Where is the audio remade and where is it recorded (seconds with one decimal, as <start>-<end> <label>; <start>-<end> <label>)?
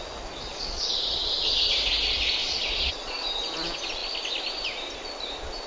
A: 0.0-0.5 recorded; 0.5-1.6 remade; 1.6-2.4 recorded; 2.4-3.2 remade; 3.2-5.7 recorded